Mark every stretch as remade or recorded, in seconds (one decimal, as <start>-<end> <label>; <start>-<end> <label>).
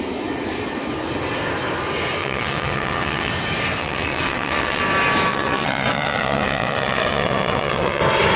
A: 0.0-2.2 recorded; 2.2-3.3 remade; 3.3-3.8 recorded; 3.8-4.8 remade; 4.8-5.3 recorded; 5.3-8.0 remade; 8.0-8.4 recorded